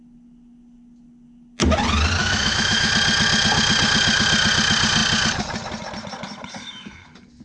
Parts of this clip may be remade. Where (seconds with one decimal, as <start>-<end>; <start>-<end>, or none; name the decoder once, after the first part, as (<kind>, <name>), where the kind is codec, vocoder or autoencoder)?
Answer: 2.2-2.9 (autoencoder, DAC-VAE)